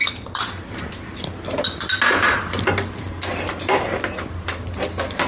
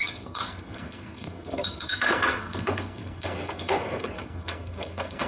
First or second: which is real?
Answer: first